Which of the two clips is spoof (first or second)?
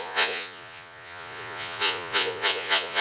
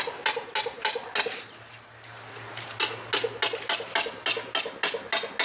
first